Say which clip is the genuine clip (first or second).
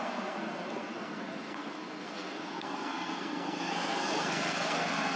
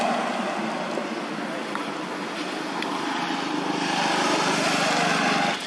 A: second